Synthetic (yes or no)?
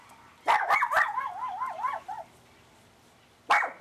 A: no